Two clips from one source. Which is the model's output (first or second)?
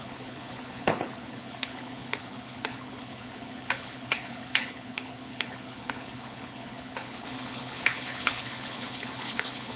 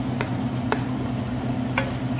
first